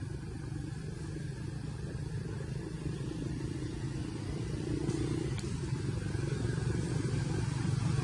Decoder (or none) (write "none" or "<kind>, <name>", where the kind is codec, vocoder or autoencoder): vocoder, BigVGAN v2